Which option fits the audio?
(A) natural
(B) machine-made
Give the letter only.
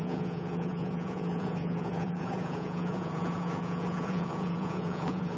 B